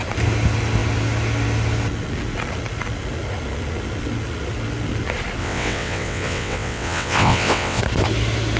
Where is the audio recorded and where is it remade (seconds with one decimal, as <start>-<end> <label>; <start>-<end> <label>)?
0.0-5.4 recorded; 5.4-7.8 remade; 7.8-8.6 recorded